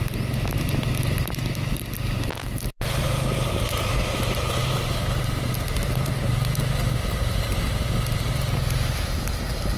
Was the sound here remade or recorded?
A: recorded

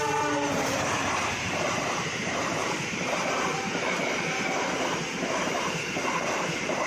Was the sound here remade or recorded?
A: remade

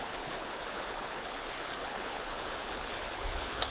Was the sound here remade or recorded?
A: remade